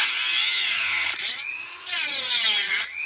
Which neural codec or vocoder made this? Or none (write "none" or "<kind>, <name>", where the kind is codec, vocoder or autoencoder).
vocoder, Vocos